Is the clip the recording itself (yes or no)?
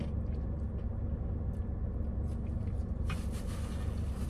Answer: yes